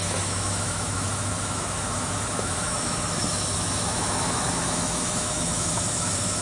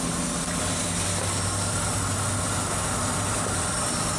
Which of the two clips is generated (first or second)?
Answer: first